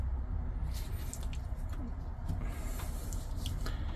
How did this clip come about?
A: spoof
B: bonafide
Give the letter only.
B